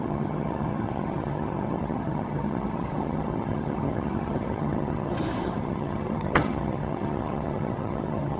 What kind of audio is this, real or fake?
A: fake